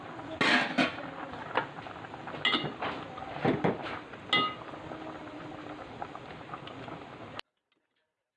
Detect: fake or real real